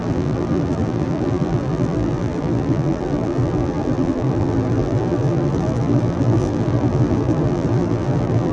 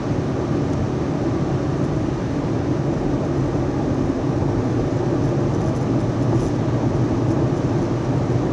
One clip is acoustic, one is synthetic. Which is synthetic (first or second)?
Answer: first